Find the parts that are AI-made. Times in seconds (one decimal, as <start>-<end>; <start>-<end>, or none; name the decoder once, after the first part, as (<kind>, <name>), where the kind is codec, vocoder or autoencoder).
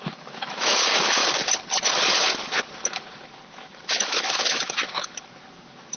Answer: 0.0-1.2 (autoencoder, DAC-VAE); 2.1-6.0